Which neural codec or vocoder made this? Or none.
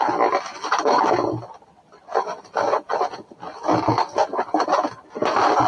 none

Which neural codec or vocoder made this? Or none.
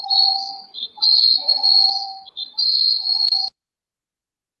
vocoder, Vocos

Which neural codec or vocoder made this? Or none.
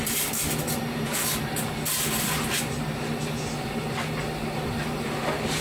none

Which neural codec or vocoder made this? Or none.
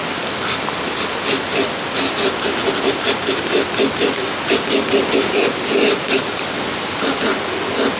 none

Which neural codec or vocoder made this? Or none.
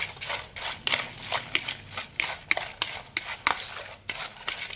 none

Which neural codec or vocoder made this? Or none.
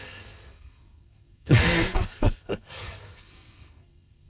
codec, SNAC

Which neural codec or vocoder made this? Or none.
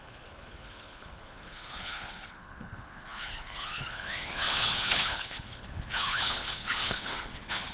codec, HILCodec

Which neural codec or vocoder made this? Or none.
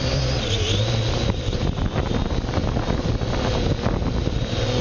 none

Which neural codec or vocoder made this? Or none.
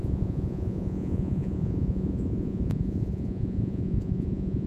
vocoder, Vocos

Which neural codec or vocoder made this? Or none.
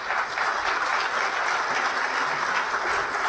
none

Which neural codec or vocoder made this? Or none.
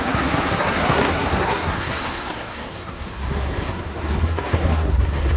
codec, SNAC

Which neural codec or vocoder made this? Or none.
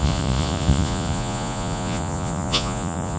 vocoder, Vocos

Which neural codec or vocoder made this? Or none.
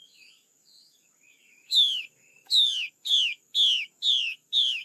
codec, DAC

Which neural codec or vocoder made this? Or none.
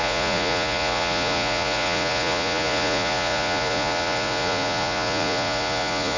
vocoder, Vocos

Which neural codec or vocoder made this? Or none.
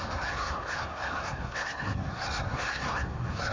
codec, SNAC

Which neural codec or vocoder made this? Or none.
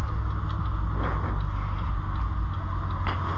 none